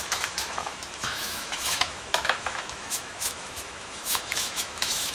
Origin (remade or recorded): remade